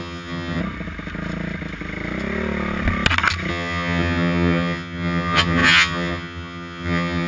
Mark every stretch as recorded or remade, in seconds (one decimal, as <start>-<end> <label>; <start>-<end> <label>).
0.0-0.6 remade; 0.6-3.5 recorded; 3.5-7.3 remade